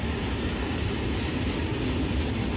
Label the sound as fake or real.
real